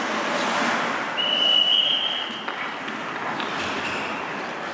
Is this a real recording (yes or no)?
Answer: yes